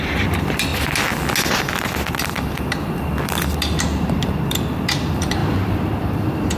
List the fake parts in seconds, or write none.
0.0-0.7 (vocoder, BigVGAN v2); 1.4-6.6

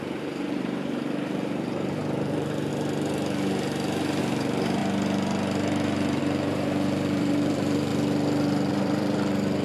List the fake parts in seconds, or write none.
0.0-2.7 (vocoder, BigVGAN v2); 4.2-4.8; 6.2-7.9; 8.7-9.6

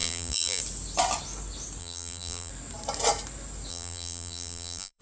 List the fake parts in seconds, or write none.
0.0-0.6 (vocoder, BigVGAN v2); 1.8-2.5; 3.7-5.0

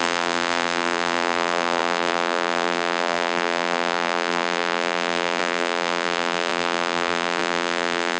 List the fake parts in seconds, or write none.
0.0-8.2 (vocoder, BigVGAN v2)

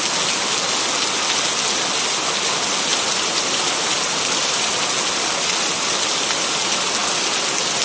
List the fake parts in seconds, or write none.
2.9-4.8 (vocoder, BigVGAN v2)

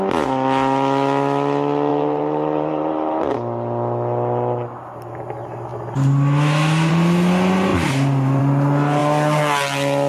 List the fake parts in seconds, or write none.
1.9-3.3 (vocoder, BigVGAN v2)